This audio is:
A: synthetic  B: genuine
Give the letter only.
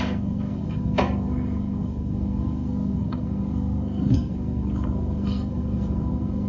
A